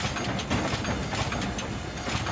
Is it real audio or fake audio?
real